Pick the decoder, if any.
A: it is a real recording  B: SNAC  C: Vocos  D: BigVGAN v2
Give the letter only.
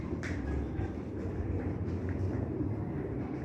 D